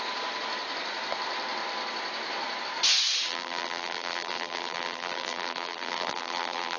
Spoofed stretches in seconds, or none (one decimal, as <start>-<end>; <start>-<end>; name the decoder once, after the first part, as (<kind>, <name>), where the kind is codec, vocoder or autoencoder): 3.3-6.8 (vocoder, BigVGAN v2)